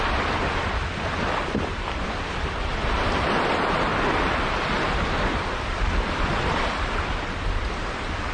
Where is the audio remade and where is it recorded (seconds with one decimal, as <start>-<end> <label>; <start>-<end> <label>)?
0.0-8.3 recorded